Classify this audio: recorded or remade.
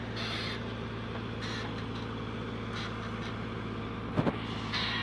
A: recorded